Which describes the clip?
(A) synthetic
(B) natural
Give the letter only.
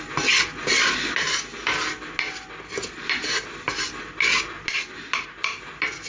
B